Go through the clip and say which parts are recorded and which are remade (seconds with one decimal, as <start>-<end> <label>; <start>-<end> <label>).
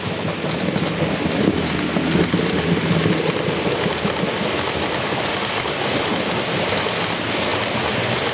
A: 0.0-8.3 recorded